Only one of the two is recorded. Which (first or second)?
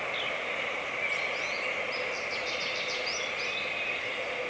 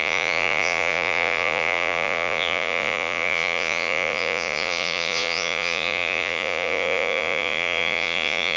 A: first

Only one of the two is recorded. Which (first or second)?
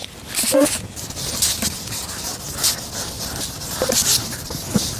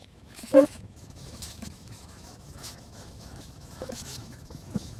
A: first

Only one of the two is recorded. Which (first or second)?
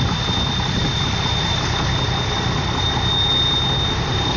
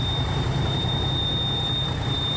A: first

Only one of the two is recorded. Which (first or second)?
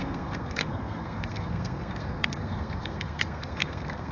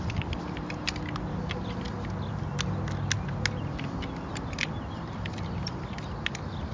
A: second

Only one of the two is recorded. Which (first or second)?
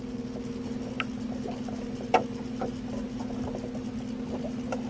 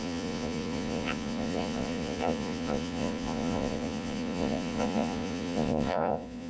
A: first